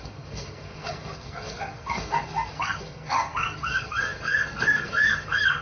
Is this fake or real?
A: fake